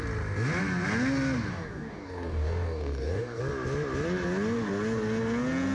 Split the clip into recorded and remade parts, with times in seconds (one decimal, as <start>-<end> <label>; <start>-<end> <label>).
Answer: 0.0-1.5 recorded; 1.5-3.4 remade; 3.4-5.7 recorded